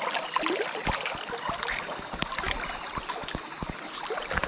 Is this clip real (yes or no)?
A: yes